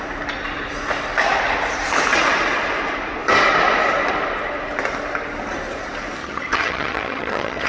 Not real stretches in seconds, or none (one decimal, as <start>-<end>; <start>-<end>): 6.2-7.7